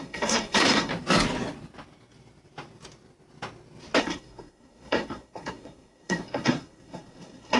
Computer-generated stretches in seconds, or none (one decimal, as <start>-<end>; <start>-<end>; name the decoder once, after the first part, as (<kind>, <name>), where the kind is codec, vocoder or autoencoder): 0.0-0.9 (codec, SNAC); 4.0-7.6